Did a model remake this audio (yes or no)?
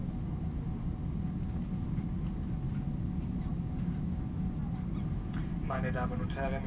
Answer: no